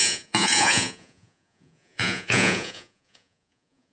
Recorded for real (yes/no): no